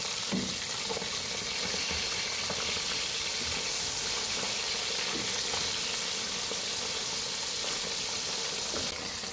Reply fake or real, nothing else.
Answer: real